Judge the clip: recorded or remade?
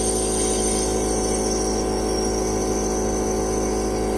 recorded